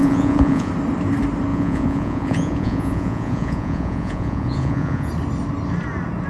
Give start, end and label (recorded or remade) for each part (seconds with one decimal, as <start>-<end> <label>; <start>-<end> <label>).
0.0-0.7 remade; 0.7-1.5 recorded; 1.5-5.1 remade; 5.1-6.3 recorded